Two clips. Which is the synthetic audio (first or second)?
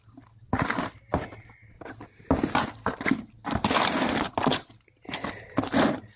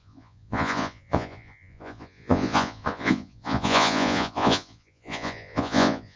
second